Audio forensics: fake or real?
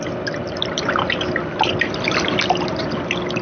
real